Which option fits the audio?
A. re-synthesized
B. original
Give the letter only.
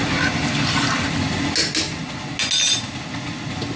B